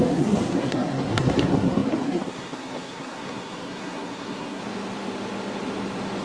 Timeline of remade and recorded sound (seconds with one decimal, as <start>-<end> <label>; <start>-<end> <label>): 0.0-4.6 remade; 4.6-6.2 recorded